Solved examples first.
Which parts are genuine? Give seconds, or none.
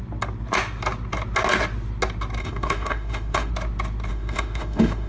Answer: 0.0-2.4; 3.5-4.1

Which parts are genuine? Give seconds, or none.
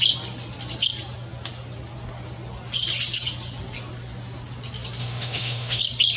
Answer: 0.0-5.0; 5.8-6.2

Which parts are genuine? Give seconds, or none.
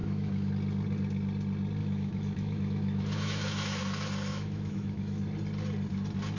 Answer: 0.5-1.8; 3.8-4.3; 5.2-6.4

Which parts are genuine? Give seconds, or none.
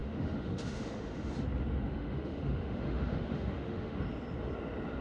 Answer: 1.3-1.8; 4.0-5.0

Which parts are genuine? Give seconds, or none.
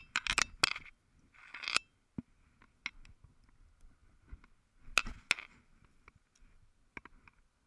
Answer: 0.0-7.7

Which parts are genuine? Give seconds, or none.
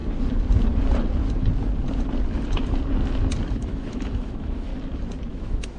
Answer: 0.0-3.5; 4.7-5.3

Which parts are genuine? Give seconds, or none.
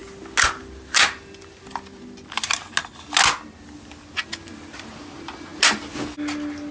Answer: 0.0-6.7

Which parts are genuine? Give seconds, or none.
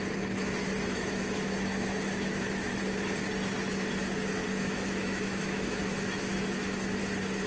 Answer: 0.0-0.9; 2.8-4.4; 7.0-7.5